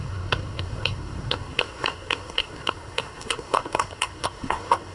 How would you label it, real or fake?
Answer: fake